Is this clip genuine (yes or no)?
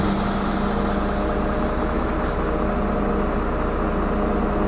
yes